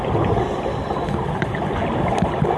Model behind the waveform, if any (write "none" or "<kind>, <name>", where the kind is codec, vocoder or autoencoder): none